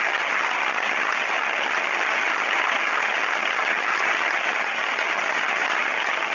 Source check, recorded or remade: remade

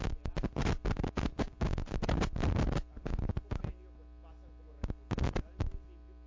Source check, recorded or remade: recorded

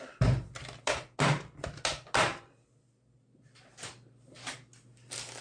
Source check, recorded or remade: recorded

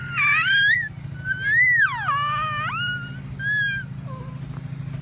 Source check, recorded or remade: recorded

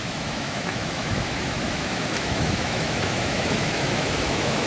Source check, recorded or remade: remade